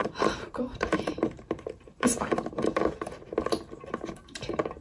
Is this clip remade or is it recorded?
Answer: remade